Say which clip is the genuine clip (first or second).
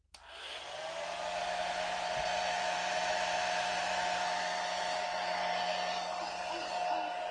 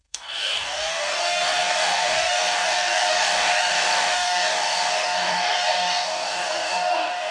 first